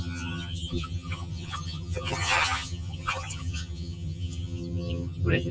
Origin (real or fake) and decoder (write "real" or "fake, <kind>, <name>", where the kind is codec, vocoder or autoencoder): fake, vocoder, HiFi-GAN